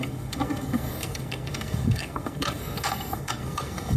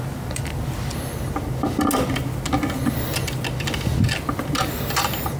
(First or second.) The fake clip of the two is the first